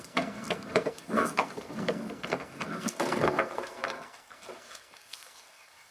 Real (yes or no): no